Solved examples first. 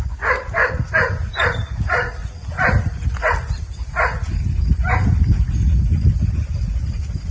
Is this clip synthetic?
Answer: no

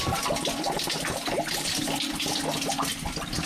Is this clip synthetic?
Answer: no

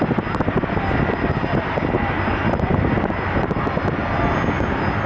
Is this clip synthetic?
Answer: no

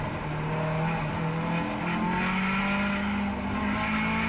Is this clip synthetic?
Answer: no